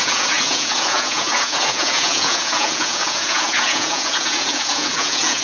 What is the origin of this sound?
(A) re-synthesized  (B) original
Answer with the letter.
A